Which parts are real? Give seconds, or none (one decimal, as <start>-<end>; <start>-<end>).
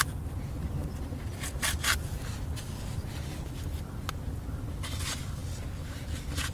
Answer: 0.0-6.5